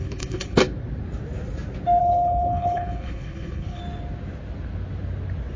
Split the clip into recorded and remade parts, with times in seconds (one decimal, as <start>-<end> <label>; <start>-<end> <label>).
0.0-0.6 remade; 0.6-2.0 recorded; 2.0-3.8 remade; 3.8-5.6 recorded

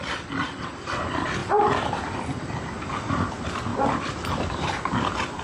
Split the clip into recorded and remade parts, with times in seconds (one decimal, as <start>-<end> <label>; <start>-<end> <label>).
0.0-5.4 recorded